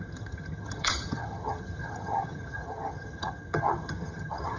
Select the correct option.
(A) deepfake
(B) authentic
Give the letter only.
A